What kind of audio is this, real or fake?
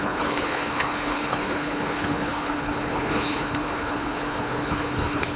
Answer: fake